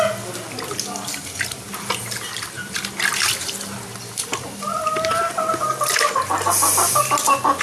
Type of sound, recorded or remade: recorded